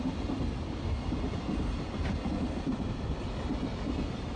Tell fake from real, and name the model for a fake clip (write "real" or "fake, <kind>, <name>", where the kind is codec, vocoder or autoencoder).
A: real